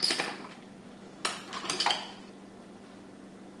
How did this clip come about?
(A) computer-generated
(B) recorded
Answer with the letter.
B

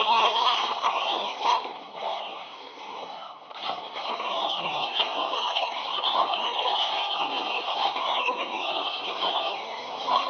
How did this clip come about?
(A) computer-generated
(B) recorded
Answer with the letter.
A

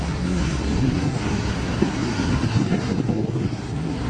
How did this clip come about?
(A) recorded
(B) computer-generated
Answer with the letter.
B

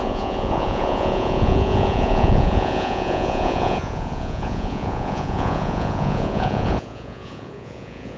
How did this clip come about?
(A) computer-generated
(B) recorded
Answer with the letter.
A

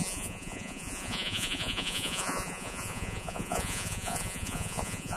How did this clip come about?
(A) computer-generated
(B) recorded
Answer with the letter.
A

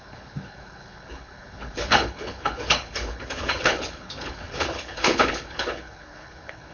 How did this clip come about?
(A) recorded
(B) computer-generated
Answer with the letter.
B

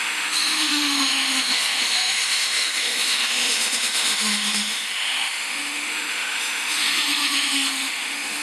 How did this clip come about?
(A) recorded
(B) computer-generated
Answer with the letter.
B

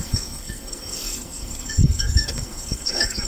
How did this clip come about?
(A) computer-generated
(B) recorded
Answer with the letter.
A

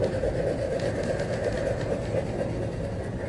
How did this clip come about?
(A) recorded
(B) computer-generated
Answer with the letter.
A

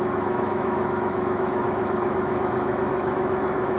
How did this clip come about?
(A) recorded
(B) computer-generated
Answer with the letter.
B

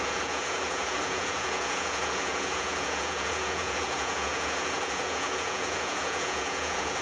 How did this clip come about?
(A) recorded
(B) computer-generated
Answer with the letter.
B